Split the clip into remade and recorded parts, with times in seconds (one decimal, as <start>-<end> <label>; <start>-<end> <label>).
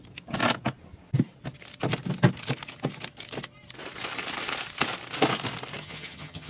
0.0-5.8 recorded; 5.8-6.5 remade